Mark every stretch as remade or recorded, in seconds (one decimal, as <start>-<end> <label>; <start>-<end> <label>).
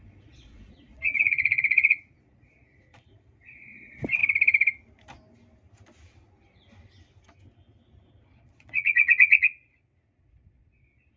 0.0-4.2 remade; 4.2-8.3 recorded; 8.3-11.2 remade